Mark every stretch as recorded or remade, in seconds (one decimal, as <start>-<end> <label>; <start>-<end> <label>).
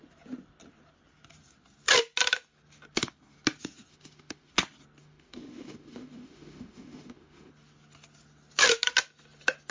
0.0-3.9 recorded; 3.9-4.5 remade; 4.5-5.0 recorded; 5.0-7.5 remade; 7.5-9.7 recorded